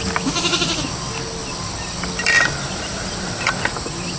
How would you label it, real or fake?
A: real